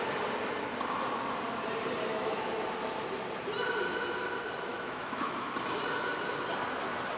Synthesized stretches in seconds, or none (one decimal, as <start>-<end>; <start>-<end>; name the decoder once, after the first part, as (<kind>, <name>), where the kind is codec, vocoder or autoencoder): 2.1-2.7 (autoencoder, DAC-VAE); 4.7-5.5

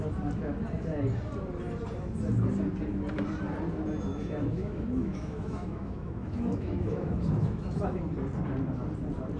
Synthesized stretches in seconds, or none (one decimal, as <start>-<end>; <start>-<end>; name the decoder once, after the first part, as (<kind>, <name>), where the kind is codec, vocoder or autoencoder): 4.1-8.0 (autoencoder, DAC-VAE)

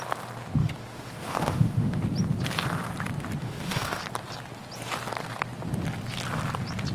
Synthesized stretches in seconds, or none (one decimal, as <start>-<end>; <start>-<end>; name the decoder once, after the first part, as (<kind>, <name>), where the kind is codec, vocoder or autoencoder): 0.6-2.0 (autoencoder, DAC-VAE); 3.4-4.0

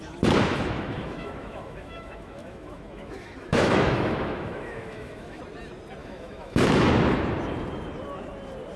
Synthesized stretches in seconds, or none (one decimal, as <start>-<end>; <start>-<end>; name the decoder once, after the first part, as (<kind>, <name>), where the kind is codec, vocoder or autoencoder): 0.5-5.4 (autoencoder, DAC-VAE); 6.0-6.9

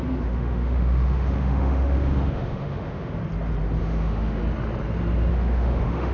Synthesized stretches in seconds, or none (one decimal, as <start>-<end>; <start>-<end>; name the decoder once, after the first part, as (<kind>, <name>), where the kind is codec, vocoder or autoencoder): 0.0-3.2 (autoencoder, DAC-VAE); 3.8-4.4; 5.3-6.1

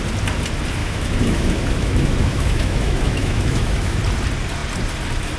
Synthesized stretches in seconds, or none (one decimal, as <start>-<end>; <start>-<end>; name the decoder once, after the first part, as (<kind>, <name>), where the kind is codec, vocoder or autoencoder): 0.8-4.0 (autoencoder, DAC-VAE)